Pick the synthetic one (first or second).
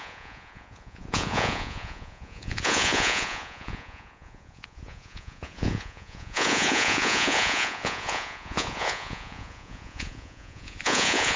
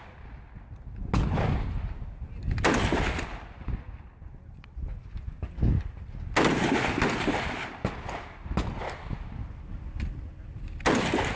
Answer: first